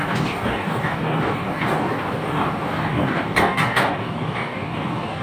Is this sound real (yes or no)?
no